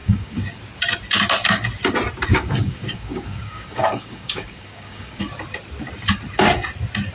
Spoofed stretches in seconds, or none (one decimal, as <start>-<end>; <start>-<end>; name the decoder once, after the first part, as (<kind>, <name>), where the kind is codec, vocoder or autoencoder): 0.0-0.6 (codec, DAC); 2.3-5.2